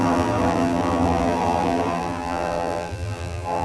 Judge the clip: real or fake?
fake